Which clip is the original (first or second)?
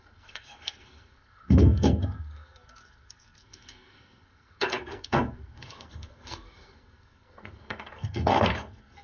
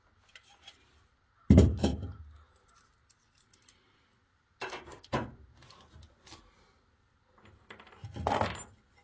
second